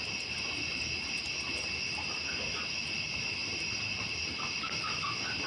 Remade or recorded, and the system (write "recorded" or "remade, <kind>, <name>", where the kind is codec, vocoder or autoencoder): recorded